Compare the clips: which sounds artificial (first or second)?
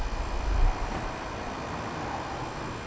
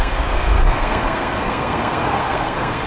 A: second